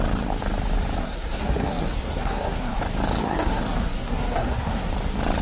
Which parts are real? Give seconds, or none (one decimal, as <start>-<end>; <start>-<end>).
0.0-1.0; 2.8-3.2; 4.9-5.4